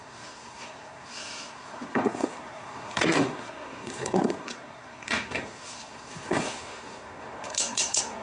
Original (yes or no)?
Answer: no